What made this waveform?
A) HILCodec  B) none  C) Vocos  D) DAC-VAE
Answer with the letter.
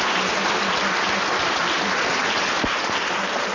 B